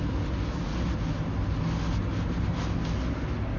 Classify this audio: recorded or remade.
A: recorded